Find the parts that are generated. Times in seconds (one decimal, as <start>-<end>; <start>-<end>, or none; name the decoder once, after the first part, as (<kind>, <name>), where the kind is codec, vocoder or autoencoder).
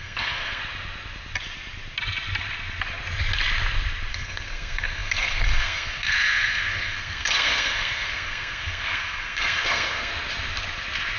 0.0-0.6 (codec, SNAC); 4.1-10.1